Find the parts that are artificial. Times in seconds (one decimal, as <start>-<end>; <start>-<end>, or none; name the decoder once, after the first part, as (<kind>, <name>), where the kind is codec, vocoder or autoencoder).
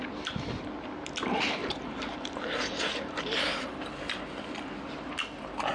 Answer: 1.6-4.2 (vocoder, BigVGAN v2)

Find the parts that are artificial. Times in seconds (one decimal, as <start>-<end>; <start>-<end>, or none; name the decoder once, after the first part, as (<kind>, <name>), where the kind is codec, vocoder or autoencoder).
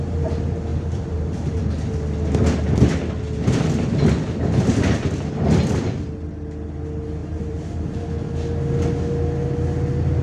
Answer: 0.7-1.6 (vocoder, BigVGAN v2); 7.2-8.0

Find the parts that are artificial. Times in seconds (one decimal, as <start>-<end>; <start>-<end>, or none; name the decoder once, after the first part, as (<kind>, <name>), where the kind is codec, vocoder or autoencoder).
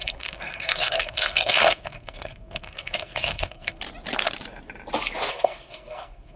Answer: 0.0-3.8 (codec, SNAC); 5.3-6.4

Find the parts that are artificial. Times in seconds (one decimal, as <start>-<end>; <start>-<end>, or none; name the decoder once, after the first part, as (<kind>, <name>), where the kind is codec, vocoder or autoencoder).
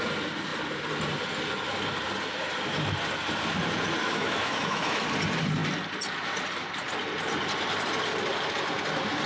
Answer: 4.0-5.0 (autoencoder, DAC-VAE)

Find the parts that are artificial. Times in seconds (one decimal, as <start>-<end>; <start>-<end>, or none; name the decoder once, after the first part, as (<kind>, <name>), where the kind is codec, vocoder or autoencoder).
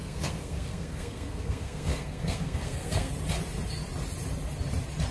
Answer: 0.0-3.1 (codec, SNAC)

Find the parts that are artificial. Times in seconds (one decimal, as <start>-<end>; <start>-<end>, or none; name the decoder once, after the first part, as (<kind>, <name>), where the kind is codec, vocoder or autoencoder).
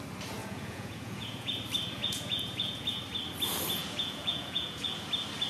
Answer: 0.4-1.5 (vocoder, Vocos); 2.0-3.0; 3.8-5.1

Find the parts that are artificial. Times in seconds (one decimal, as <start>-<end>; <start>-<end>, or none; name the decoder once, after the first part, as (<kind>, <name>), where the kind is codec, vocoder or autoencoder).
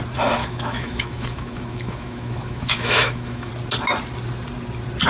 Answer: 0.4-3.5 (autoencoder, DAC-VAE)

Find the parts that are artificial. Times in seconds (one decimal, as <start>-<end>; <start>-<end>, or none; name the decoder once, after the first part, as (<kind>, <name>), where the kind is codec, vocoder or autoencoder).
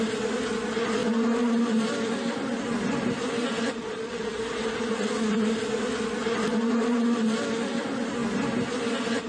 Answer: 0.0-1.0 (vocoder, BigVGAN v2); 1.6-8.2; 8.8-9.3